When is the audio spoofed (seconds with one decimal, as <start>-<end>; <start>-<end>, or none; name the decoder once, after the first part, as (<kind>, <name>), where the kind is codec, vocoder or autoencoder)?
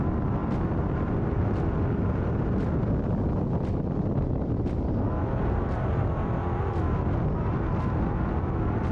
none